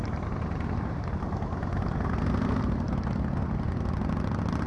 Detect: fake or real real